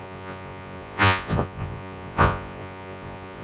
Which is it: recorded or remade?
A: remade